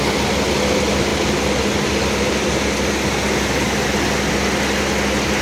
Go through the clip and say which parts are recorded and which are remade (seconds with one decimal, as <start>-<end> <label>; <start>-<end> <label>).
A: 0.0-5.4 recorded